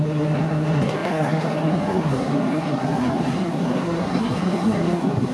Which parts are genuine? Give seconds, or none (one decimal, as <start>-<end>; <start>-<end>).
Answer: none